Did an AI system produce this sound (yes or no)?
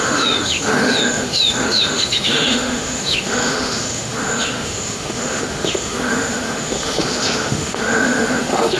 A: yes